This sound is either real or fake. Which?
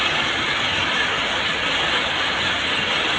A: real